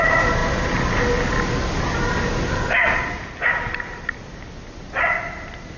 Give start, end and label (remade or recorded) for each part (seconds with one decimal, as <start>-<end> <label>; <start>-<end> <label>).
0.0-5.8 recorded